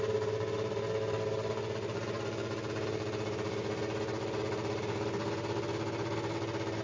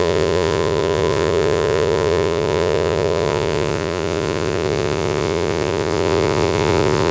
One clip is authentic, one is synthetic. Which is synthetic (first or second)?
second